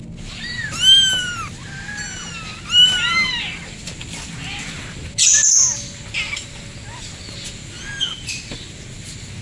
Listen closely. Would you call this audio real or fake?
real